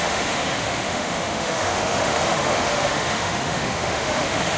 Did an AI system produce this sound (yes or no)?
yes